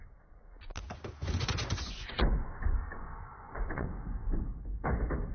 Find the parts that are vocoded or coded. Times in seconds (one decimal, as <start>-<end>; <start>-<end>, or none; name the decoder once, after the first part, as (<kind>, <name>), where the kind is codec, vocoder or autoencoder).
1.2-4.4 (vocoder, Vocos)